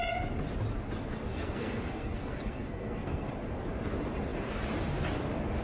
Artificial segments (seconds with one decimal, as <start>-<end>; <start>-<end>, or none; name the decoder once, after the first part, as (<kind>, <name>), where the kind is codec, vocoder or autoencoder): 1.3-3.3 (codec, SNAC)